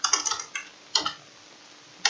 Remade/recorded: recorded